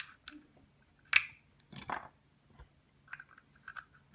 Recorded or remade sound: recorded